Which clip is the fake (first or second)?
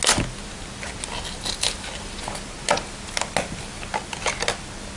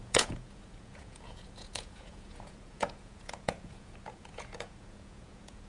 second